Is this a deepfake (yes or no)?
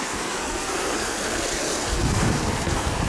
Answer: yes